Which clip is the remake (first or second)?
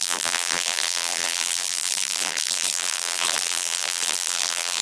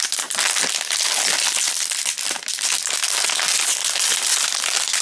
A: first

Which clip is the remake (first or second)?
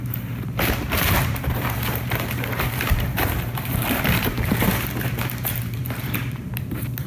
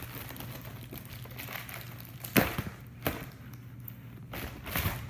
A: first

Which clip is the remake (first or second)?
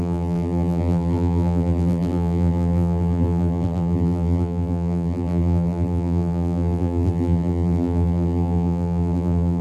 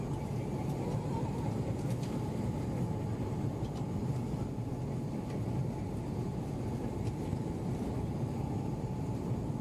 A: first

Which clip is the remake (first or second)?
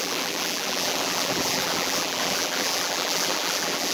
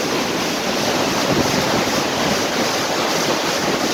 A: first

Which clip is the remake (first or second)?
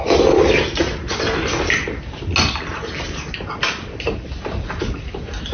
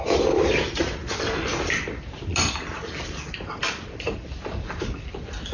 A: second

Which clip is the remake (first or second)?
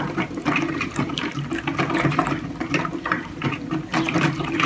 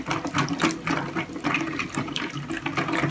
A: first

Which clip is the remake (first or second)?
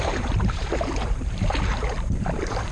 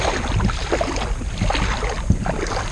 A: first